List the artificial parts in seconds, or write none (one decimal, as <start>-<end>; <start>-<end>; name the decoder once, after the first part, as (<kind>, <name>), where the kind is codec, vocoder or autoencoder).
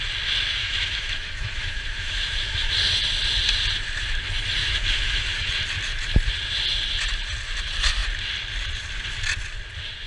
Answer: 0.6-2.7 (autoencoder, DAC-VAE); 4.6-5.5